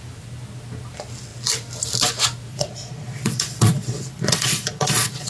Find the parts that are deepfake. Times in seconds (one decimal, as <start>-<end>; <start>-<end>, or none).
2.5-5.3